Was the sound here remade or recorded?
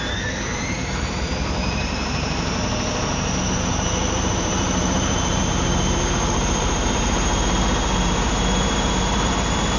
remade